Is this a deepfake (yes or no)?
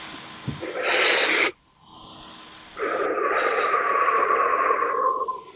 no